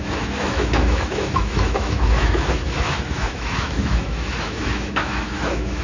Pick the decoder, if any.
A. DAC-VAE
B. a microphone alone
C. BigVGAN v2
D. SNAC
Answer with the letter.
A